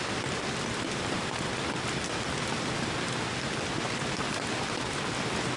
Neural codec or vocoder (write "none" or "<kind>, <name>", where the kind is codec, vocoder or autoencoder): none